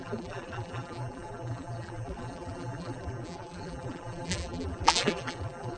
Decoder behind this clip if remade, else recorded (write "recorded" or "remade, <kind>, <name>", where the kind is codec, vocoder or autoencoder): remade, vocoder, BigVGAN v2